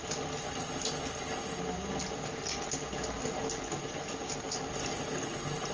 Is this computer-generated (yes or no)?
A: no